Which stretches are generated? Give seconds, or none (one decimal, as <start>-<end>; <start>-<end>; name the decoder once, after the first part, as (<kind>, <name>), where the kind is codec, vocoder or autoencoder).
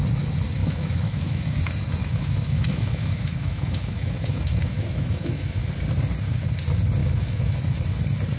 0.6-1.6 (autoencoder, DAC-VAE); 2.0-5.6; 7.0-7.6